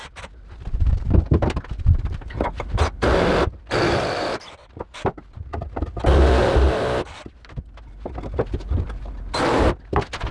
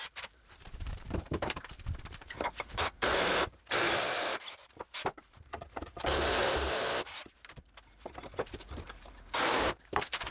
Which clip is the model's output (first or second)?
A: second